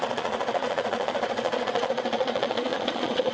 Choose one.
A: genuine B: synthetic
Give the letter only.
B